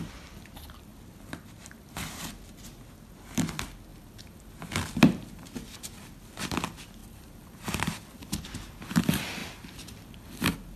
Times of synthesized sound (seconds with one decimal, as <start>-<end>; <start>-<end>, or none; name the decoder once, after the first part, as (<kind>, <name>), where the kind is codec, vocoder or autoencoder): 0.9-1.9 (vocoder, BigVGAN v2); 3.9-6.1; 7.0-9.0